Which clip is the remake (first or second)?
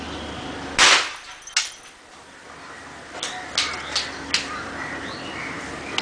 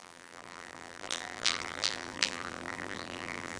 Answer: second